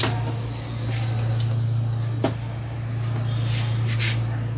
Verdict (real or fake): real